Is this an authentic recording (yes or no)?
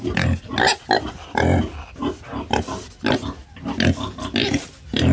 yes